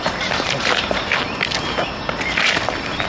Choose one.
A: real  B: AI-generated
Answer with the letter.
B